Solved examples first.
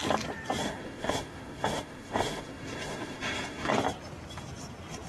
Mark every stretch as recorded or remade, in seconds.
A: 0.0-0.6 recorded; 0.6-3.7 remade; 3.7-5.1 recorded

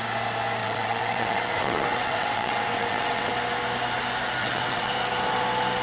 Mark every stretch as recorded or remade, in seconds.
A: 0.0-0.6 recorded; 0.6-3.3 remade; 3.3-4.4 recorded; 4.4-4.9 remade; 4.9-5.8 recorded

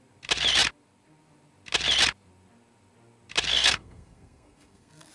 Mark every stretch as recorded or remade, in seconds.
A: 0.0-3.5 recorded; 3.5-5.1 remade

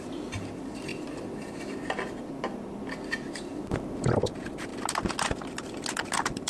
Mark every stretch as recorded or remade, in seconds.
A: 0.0-6.5 recorded

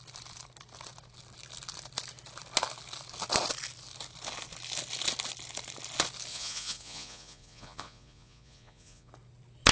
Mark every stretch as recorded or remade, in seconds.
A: 0.0-6.3 recorded; 6.3-9.1 remade; 9.1-9.7 recorded